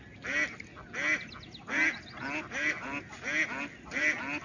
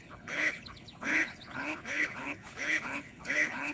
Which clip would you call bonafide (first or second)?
first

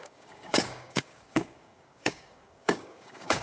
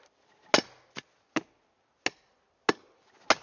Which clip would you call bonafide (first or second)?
second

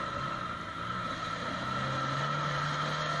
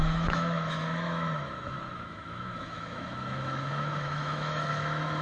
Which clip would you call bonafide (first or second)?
first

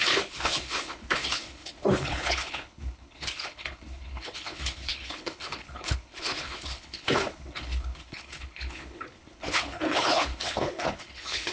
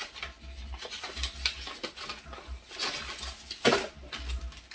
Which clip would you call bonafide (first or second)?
second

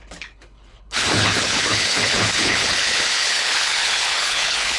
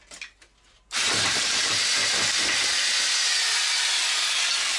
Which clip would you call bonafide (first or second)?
second